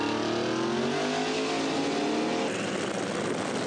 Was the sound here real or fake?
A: real